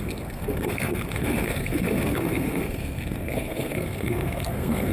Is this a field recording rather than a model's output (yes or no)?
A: no